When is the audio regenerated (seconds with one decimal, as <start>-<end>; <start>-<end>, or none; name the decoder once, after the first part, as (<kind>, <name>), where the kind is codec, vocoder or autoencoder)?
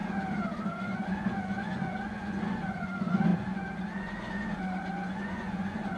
0.7-6.0 (vocoder, Vocos)